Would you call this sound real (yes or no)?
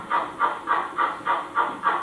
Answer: yes